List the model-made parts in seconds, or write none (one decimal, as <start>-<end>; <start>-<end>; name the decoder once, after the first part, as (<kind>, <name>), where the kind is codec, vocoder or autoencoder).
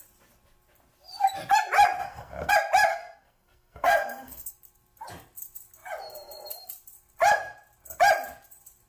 2.0-2.5 (codec, SNAC); 2.9-4.5